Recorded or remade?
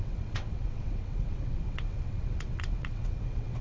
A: remade